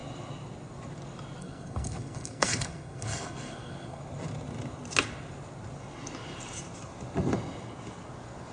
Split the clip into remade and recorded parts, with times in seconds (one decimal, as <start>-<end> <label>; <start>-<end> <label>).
0.0-1.4 recorded; 1.4-4.0 remade; 4.0-8.5 recorded